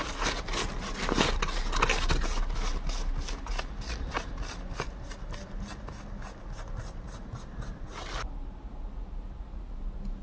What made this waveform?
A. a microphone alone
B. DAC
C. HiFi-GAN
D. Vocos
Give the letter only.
A